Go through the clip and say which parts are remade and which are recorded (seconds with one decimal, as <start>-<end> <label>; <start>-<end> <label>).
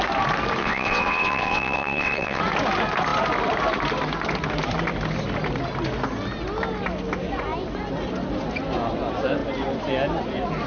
0.0-0.6 recorded; 0.6-2.4 remade; 2.4-10.7 recorded